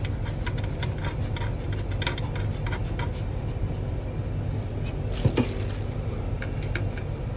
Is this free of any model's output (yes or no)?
yes